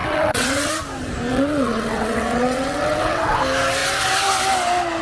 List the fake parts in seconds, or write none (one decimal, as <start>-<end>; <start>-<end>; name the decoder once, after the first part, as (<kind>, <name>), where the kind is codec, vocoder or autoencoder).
0.0-0.7 (vocoder, WaveNeXt); 1.3-3.4